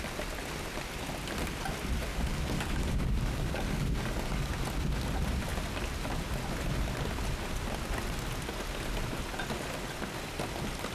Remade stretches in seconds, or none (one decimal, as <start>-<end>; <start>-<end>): 2.1-4.5